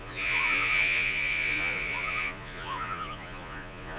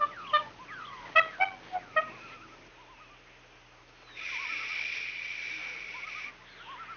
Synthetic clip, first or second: first